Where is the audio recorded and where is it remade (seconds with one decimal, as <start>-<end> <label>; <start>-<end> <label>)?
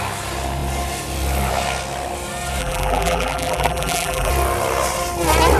0.0-2.6 recorded; 2.6-4.3 remade; 4.3-5.6 recorded